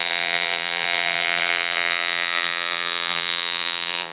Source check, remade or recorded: remade